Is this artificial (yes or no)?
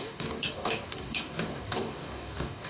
yes